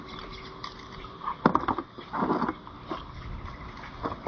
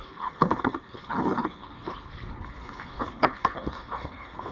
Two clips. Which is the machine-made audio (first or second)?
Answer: second